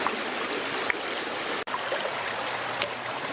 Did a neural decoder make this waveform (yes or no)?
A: no